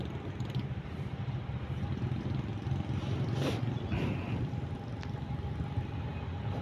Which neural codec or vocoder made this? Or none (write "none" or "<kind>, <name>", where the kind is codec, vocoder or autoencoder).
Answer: none